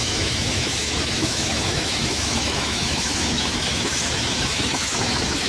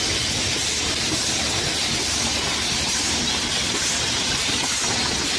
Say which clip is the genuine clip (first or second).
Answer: second